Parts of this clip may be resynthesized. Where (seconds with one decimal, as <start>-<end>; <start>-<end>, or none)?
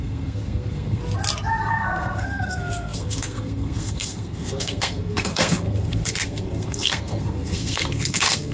0.0-1.0; 1.7-8.5